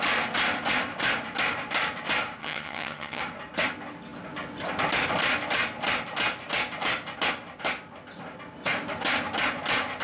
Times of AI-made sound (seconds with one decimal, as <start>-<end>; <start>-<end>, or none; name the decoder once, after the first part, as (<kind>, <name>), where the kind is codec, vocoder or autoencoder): 2.4-3.2 (vocoder, HiFi-GAN)